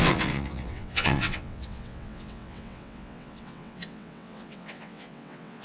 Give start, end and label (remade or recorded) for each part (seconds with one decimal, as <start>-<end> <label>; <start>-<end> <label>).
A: 0.0-5.6 remade